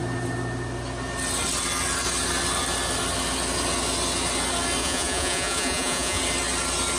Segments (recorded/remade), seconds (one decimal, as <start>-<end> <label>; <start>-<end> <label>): 0.0-4.8 recorded; 4.8-6.2 remade; 6.2-7.0 recorded